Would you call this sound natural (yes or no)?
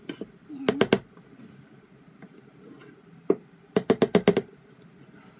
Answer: yes